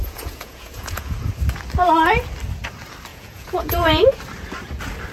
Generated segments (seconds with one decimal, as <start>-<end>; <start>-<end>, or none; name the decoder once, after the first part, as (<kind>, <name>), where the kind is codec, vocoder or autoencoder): 0.0-1.3 (vocoder, Vocos); 3.1-4.1